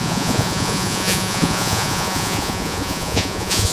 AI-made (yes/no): yes